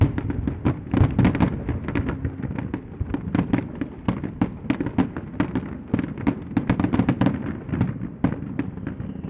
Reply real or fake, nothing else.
real